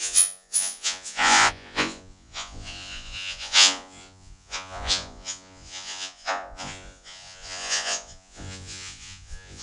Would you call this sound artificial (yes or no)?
yes